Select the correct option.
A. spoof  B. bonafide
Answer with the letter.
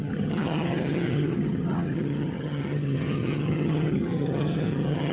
A